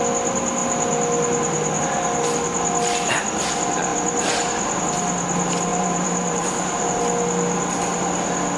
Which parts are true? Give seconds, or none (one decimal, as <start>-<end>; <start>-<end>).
0.0-5.7; 7.0-8.6